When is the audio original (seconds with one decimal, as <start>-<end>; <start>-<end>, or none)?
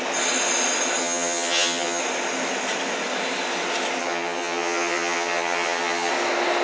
0.0-1.0; 2.0-4.0; 6.1-6.6